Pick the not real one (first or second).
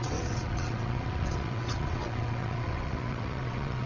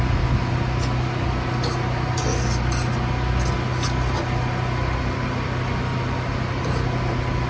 first